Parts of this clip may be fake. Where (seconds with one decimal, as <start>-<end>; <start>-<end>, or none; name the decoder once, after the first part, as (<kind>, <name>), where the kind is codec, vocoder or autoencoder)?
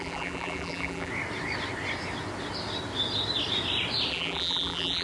0.0-1.1 (vocoder, BigVGAN v2); 4.1-5.0